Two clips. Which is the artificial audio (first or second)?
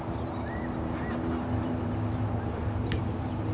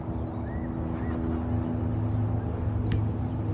first